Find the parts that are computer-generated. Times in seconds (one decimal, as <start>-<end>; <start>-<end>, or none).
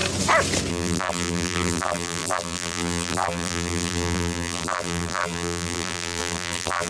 0.7-6.9